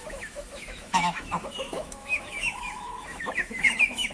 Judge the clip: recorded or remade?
remade